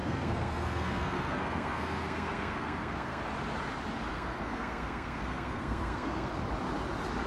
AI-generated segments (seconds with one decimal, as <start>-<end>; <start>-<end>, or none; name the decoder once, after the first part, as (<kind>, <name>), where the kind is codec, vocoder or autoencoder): 0.0-3.2 (codec, SNAC); 4.1-6.3